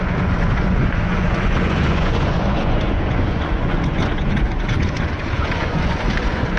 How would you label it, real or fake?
fake